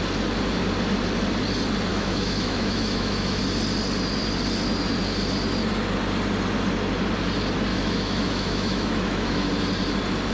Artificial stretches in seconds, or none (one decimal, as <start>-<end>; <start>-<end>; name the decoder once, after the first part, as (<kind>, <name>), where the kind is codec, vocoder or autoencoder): 1.9-3.4 (autoencoder, DAC-VAE); 7.7-9.5

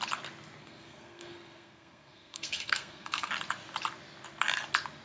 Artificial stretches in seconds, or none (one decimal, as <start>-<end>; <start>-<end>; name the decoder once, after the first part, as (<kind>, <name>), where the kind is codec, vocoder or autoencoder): 0.6-3.3 (codec, SNAC)

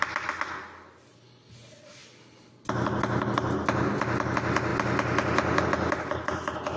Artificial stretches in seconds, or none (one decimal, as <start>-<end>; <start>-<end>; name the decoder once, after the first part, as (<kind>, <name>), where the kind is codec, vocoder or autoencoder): none